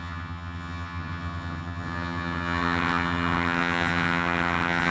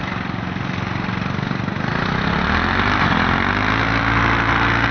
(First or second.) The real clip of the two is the second